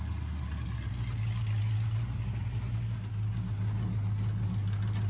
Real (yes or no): yes